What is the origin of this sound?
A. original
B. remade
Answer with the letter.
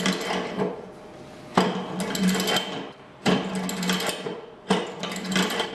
A